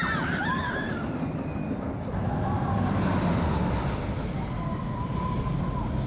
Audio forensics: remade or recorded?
recorded